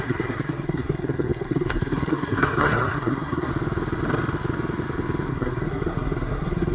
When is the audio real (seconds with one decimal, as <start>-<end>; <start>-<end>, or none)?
3.5-5.3